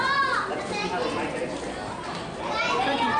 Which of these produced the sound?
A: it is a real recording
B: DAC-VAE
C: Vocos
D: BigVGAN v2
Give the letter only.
A